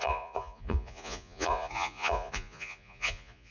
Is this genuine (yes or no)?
no